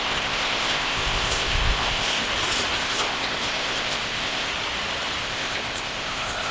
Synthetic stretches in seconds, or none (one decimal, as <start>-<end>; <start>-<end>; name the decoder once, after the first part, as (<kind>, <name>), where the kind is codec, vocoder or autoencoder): 0.0-2.3 (codec, ZipCodec); 2.8-4.5; 5.2-6.5